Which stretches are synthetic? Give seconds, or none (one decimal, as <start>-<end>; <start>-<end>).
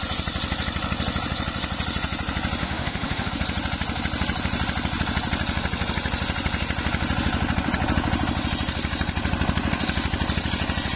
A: 2.6-3.3